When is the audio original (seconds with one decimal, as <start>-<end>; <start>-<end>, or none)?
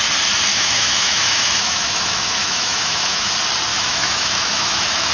0.0-0.5; 3.3-3.7